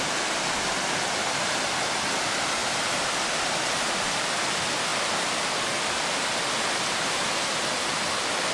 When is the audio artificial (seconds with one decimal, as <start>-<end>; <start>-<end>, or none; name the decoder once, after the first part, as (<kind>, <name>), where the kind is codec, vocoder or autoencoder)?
none